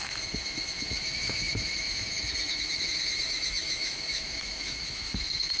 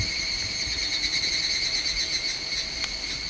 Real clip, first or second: second